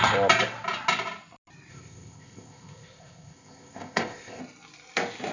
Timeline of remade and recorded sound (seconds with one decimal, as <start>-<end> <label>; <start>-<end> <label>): 0.0-1.7 recorded; 1.7-4.4 remade; 4.4-5.3 recorded